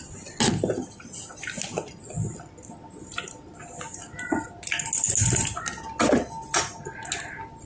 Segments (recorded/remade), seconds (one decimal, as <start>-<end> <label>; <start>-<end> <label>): 0.0-7.7 recorded